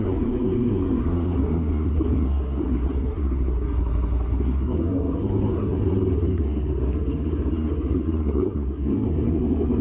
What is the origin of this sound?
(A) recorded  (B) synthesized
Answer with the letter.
B